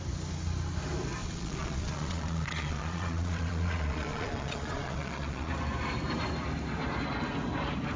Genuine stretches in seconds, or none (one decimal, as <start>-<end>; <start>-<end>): 0.0-1.2; 5.5-8.0